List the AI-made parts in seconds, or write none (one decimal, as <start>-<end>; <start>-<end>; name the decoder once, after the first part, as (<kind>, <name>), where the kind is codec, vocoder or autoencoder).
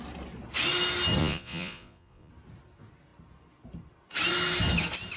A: 1.2-2.3 (vocoder, Vocos)